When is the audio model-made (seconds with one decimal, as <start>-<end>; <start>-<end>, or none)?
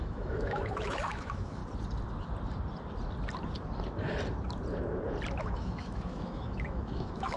0.0-1.6; 5.4-7.4